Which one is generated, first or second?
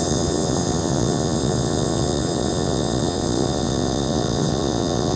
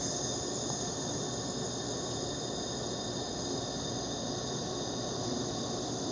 first